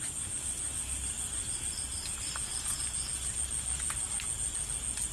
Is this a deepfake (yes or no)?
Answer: no